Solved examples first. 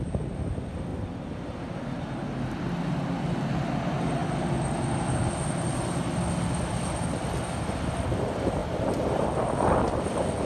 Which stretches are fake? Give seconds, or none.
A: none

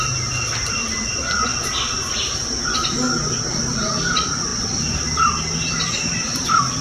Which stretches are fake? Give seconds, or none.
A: none